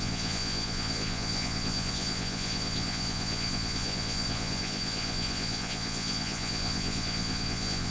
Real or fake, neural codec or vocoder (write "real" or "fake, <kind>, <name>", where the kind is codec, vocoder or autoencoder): fake, vocoder, Vocos